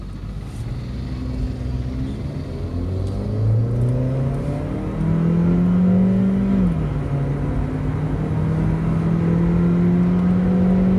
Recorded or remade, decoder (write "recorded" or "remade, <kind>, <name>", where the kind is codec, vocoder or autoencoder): recorded